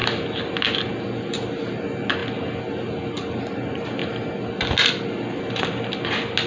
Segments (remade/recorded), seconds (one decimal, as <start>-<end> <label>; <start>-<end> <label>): 0.0-0.9 remade; 0.9-6.5 recorded